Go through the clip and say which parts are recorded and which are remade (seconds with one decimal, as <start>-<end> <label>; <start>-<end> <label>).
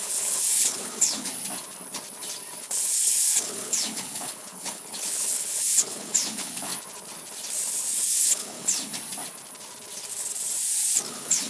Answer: 0.0-1.3 remade; 1.3-2.6 recorded; 2.6-6.7 remade; 6.7-7.9 recorded; 7.9-8.9 remade; 8.9-11.1 recorded; 11.1-11.5 remade